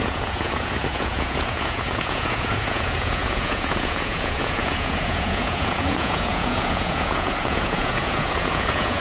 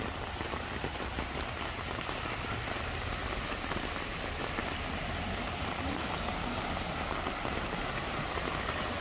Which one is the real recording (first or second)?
second